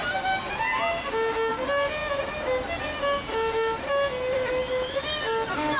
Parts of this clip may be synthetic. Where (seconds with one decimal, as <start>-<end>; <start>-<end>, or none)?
none